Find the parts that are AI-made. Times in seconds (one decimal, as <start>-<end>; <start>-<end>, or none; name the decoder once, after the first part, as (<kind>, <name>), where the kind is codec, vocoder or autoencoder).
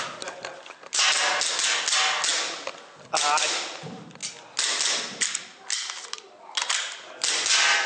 none